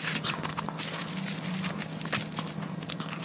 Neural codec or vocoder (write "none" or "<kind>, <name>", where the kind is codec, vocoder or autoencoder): none